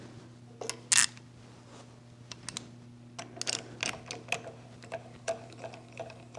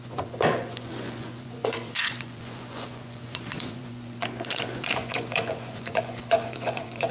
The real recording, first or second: first